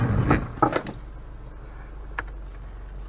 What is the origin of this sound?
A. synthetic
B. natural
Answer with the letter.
B